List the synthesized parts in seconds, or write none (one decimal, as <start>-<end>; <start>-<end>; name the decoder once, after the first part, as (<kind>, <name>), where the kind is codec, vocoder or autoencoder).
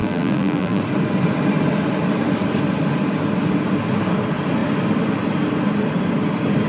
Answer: 0.0-0.8 (vocoder, BigVGAN v2)